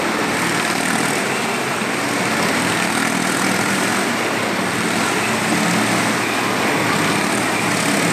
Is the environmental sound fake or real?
real